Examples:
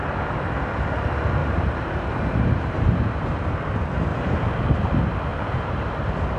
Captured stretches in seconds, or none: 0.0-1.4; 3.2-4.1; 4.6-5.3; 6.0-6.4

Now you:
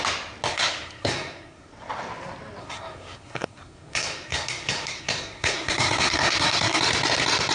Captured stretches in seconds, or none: 0.0-0.5; 1.7-2.6; 6.8-7.5

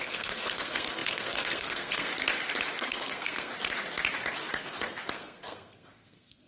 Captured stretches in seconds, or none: 2.1-2.8; 3.5-5.1

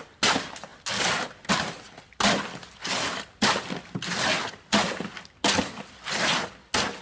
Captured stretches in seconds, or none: 0.0-7.0

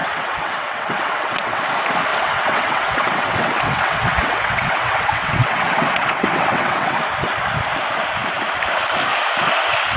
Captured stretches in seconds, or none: 1.6-2.1; 7.0-10.0

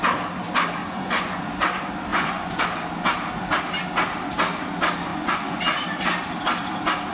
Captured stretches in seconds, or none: 0.0-0.8; 1.5-2.1; 2.6-5.1; 5.6-7.1

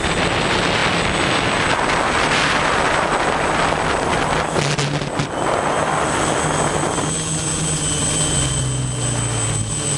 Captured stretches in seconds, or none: 0.0-10.0

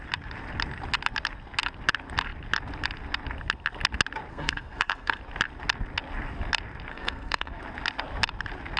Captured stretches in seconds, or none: 0.0-4.3; 5.2-6.9; 7.5-8.8